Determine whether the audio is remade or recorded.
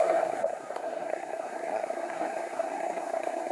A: remade